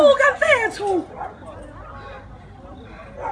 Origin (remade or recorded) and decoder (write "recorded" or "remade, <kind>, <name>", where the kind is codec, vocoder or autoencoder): recorded